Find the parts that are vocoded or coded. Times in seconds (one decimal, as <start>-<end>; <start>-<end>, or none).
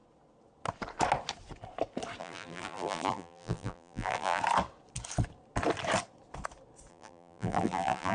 2.2-4.4; 6.9-8.1